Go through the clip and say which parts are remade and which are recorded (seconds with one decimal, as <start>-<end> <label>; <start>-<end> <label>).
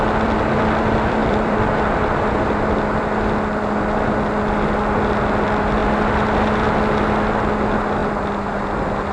0.0-1.2 recorded; 1.2-1.7 remade; 1.7-8.0 recorded; 8.0-8.6 remade; 8.6-9.1 recorded